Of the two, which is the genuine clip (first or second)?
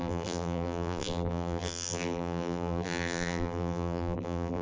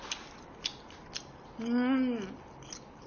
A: second